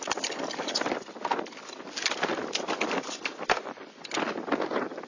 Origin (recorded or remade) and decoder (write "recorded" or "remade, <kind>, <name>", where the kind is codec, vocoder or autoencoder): recorded